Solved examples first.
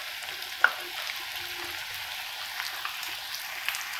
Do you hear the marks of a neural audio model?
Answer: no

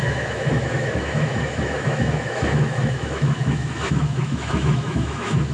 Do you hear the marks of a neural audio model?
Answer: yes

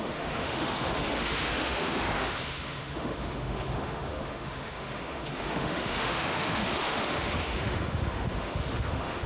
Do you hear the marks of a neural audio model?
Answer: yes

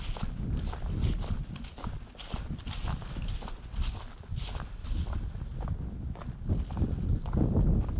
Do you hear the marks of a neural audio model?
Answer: no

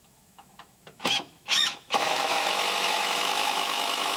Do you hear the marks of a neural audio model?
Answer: yes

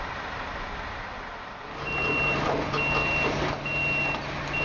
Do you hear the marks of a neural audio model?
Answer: no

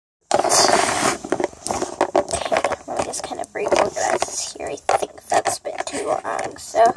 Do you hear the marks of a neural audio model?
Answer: no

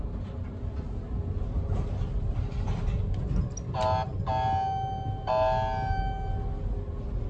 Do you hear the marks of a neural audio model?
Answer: no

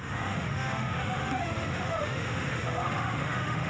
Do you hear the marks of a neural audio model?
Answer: yes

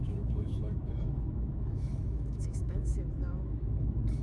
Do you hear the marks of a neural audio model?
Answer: yes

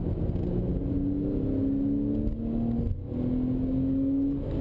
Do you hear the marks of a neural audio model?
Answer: no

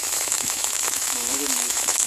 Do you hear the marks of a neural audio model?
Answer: yes